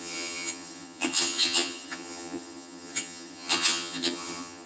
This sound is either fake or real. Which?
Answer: fake